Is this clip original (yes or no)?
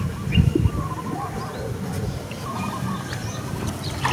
no